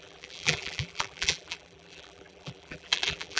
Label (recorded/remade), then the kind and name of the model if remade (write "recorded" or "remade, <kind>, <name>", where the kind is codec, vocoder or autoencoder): remade, vocoder, BigVGAN v2